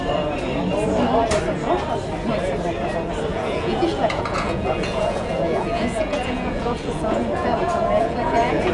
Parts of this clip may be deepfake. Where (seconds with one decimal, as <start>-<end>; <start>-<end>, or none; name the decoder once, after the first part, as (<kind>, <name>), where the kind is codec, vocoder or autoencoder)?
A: 3.3-8.7 (vocoder, Vocos)